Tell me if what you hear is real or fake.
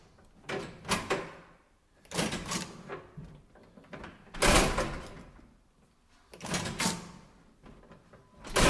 real